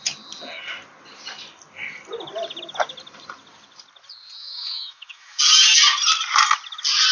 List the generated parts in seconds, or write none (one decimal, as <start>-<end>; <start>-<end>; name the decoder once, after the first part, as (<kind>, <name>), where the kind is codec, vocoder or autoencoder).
4.4-5.4 (autoencoder, DAC-VAE)